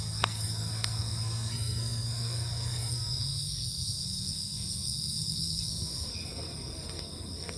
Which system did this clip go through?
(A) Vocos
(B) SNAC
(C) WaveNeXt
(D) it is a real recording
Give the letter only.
B